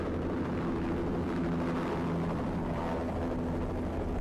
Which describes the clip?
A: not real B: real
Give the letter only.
B